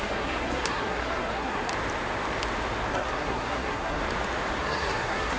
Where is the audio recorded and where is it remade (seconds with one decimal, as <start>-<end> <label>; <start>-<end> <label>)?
0.0-1.7 remade; 1.7-2.9 recorded; 2.9-4.0 remade; 4.0-4.6 recorded; 4.6-5.4 remade